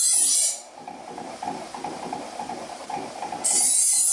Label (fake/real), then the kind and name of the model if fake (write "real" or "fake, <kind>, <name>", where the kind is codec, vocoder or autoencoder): fake, vocoder, BigVGAN v2